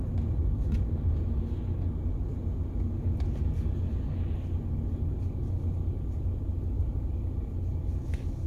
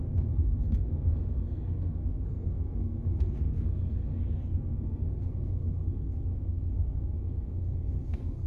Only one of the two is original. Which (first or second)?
first